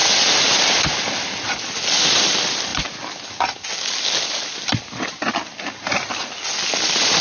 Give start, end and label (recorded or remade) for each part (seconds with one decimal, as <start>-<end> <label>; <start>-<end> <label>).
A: 0.0-7.2 recorded